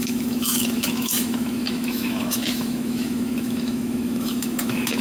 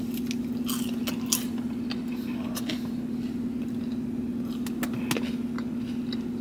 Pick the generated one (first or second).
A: first